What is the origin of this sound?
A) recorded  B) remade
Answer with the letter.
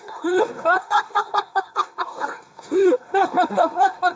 B